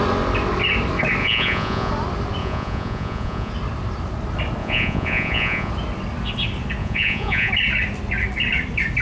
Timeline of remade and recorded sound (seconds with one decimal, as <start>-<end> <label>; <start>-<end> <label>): 0.0-1.2 recorded; 1.2-1.9 remade; 1.9-2.4 recorded; 2.4-3.5 remade; 3.5-4.6 recorded; 4.6-5.7 remade; 5.7-6.8 recorded; 6.8-7.5 remade; 7.5-9.0 recorded